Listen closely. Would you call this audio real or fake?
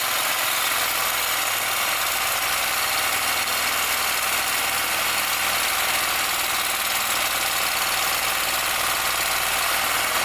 real